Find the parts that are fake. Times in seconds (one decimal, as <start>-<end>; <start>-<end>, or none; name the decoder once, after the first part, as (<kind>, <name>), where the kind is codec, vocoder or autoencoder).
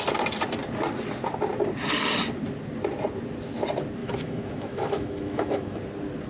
4.0-5.8 (autoencoder, DAC-VAE)